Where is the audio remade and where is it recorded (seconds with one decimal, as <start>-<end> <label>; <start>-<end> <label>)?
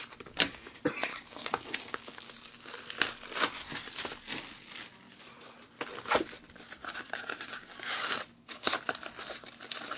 0.0-1.1 recorded; 1.1-2.7 remade; 2.7-6.8 recorded; 6.8-8.2 remade; 8.2-10.0 recorded